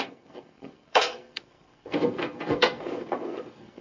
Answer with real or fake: fake